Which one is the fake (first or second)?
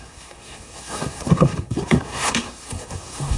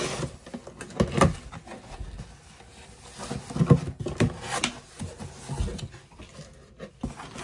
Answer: first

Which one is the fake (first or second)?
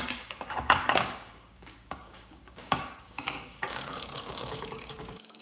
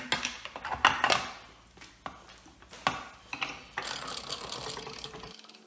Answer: first